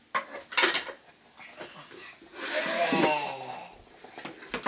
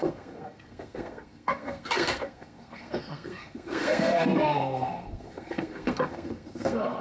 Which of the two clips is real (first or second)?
first